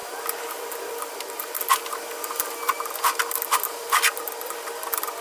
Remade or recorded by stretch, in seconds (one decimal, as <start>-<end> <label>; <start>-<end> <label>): 0.0-5.2 recorded